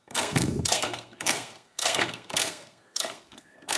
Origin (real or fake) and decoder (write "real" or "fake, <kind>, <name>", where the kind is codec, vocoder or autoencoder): fake, codec, SNAC